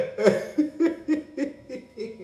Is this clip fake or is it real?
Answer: fake